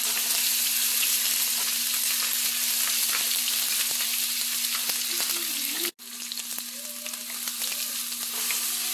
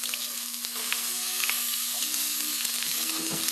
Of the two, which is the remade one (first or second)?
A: second